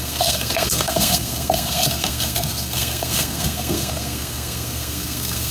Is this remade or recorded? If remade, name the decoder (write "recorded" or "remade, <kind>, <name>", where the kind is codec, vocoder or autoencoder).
remade, codec, SNAC